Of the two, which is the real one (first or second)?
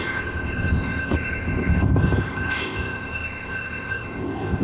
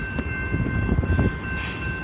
second